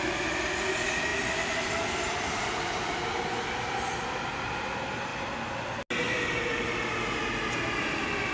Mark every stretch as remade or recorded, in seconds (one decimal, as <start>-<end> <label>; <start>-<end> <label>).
0.0-8.3 recorded